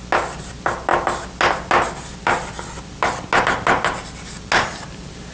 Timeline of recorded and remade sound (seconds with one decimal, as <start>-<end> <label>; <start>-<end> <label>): 0.0-5.3 recorded